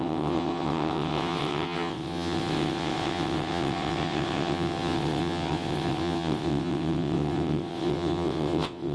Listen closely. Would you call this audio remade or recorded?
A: remade